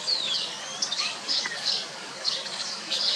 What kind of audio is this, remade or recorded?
remade